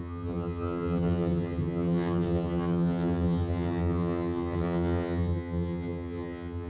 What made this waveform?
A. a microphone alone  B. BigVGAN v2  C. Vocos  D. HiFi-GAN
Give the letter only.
D